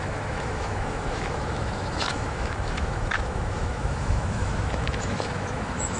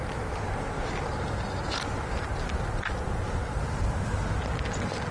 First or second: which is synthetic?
first